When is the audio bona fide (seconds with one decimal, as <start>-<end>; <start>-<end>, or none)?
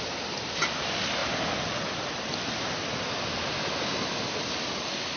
0.0-5.2